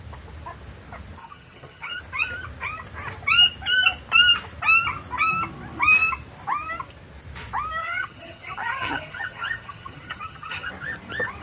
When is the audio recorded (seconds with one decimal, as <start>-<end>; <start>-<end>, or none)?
0.0-1.2; 2.0-7.8; 10.7-11.4